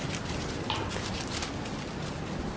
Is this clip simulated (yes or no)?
no